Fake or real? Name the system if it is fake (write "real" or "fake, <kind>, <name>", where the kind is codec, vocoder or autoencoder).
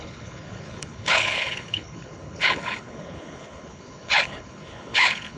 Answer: fake, codec, HILCodec